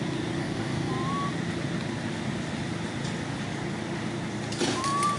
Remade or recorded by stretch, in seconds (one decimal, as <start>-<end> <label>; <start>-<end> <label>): 0.0-0.4 recorded; 0.4-0.9 remade; 0.9-5.2 recorded